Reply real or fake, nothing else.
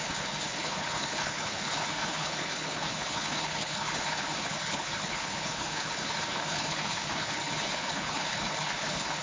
fake